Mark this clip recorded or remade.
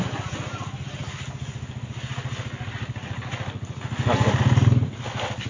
recorded